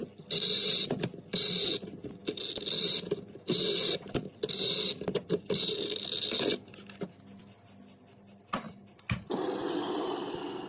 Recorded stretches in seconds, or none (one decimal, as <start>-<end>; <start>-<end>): 0.0-10.7